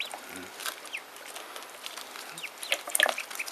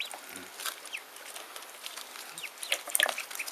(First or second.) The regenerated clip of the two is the second